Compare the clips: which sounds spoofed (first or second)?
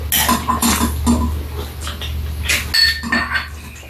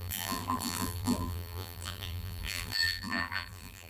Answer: second